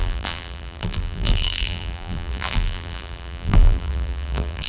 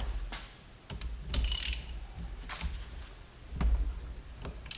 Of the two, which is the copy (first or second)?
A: first